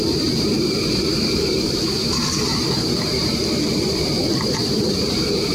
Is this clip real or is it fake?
fake